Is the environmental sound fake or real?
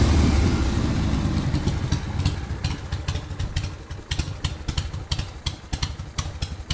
real